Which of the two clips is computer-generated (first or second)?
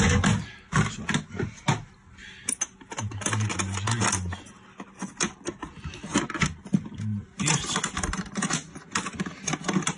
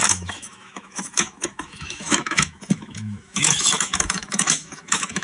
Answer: second